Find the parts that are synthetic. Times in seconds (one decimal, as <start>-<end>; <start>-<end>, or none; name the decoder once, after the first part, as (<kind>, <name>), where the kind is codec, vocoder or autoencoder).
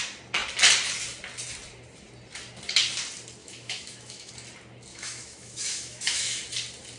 3.4-4.3 (autoencoder, DAC-VAE); 4.9-6.4